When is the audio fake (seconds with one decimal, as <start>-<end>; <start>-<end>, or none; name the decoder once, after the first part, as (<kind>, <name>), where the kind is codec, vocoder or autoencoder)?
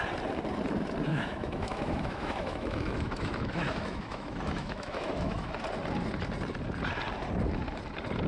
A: 1.1-5.5 (autoencoder, DAC-VAE)